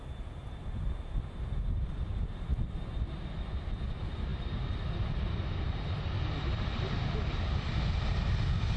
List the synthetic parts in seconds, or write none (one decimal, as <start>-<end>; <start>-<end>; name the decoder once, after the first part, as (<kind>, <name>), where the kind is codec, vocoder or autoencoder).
none